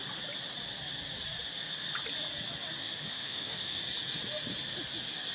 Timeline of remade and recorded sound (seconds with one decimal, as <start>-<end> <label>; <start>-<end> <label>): 0.0-2.8 recorded; 2.8-3.8 remade; 3.8-5.3 recorded